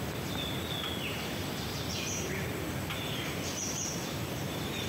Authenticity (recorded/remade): recorded